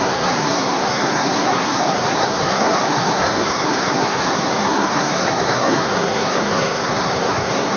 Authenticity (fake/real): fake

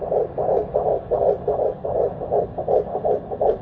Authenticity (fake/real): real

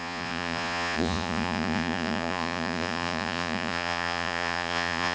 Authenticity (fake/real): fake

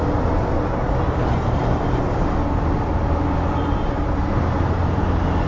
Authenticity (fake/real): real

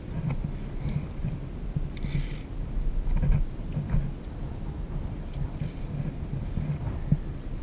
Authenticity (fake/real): real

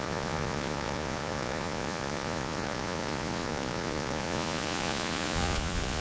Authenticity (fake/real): fake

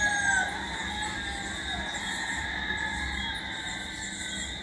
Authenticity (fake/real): real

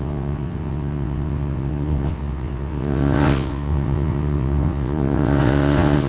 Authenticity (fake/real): fake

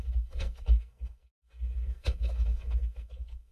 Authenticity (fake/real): fake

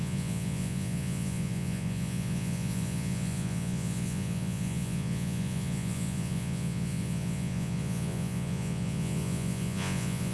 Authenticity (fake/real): fake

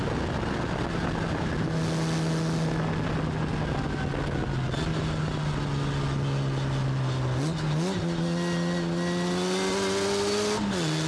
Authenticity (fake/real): real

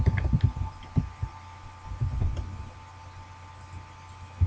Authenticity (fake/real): real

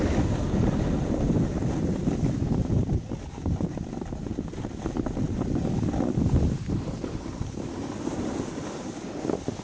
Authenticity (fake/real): real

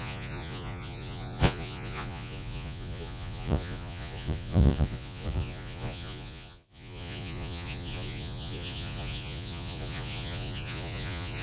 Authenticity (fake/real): fake